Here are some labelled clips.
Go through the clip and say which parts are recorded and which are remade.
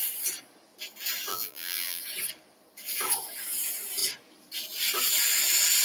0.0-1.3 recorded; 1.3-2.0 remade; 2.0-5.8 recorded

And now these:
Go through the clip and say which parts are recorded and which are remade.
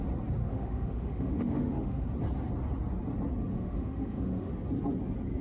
0.0-0.4 recorded; 0.4-2.1 remade; 2.1-3.5 recorded; 3.5-4.5 remade; 4.5-5.4 recorded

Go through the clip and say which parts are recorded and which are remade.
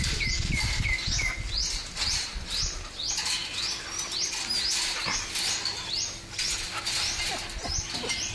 0.0-1.8 recorded; 1.8-2.4 remade; 2.4-8.3 recorded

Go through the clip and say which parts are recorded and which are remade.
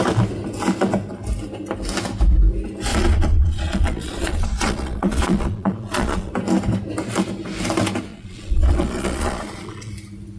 0.0-2.9 recorded; 2.9-6.3 remade; 6.3-8.1 recorded; 8.1-9.9 remade; 9.9-10.4 recorded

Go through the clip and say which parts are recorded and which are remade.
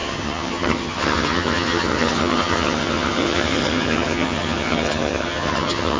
0.0-6.0 remade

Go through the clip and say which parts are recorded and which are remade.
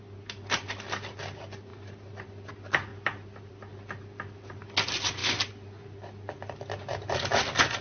0.0-1.7 recorded; 1.7-2.5 remade; 2.5-2.9 recorded; 2.9-3.5 remade; 3.5-7.8 recorded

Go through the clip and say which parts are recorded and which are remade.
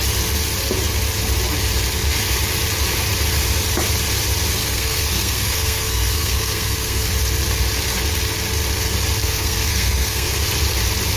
0.0-4.6 recorded; 4.6-7.1 remade; 7.1-9.2 recorded; 9.2-10.3 remade; 10.3-11.2 recorded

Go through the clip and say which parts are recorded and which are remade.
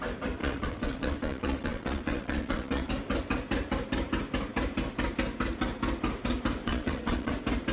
0.0-0.4 recorded; 0.4-2.9 remade; 2.9-6.6 recorded; 6.6-7.3 remade; 7.3-7.7 recorded